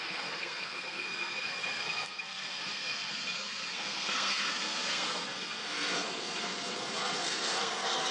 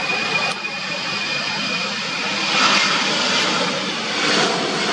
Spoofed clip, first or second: first